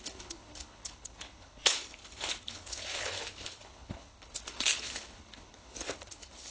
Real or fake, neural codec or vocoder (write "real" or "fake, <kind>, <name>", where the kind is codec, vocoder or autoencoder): fake, codec, HILCodec